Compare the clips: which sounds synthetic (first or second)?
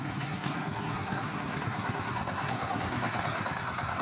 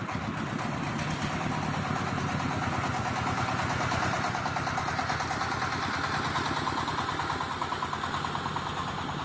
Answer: first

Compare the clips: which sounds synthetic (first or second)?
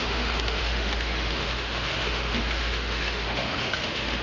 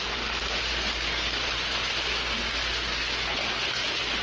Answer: first